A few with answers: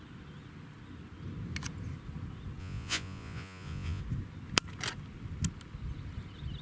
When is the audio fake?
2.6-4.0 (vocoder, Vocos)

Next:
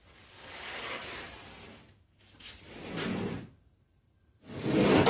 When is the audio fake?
1.0-4.1 (vocoder, BigVGAN v2)

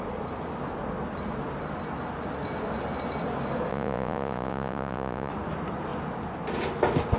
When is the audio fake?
3.7-5.3 (vocoder, Vocos)

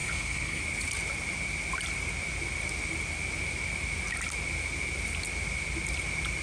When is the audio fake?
0.0-0.6 (codec, SNAC)

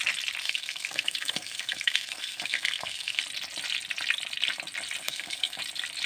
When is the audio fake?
0.4-3.2 (codec, SNAC); 5.0-5.6

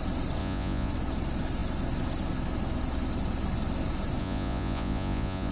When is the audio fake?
0.4-0.9 (vocoder, Vocos); 4.2-5.5

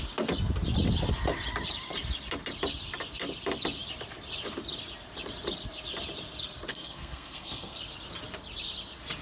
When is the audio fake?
6.7-7.8 (codec, SNAC)

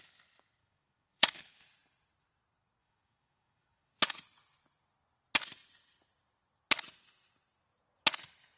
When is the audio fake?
0.6-1.7 (codec, DAC); 2.8-4.2